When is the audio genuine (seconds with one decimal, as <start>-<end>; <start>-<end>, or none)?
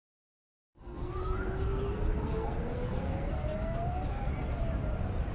4.3-5.3